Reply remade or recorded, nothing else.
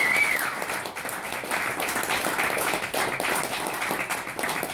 recorded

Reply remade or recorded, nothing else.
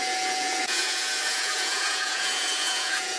remade